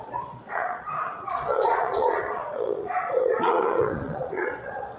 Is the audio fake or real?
fake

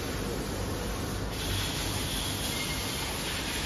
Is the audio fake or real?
real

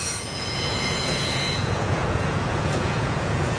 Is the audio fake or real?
fake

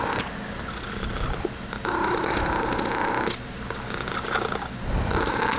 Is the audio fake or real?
real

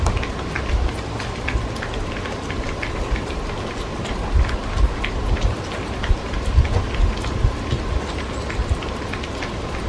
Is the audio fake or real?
real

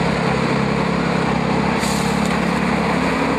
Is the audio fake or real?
real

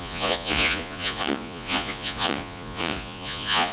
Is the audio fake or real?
fake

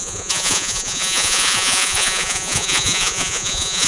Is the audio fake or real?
fake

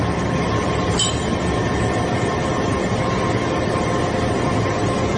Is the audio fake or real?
real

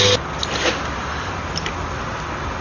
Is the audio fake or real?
real